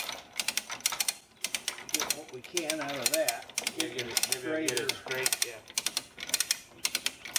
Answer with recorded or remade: recorded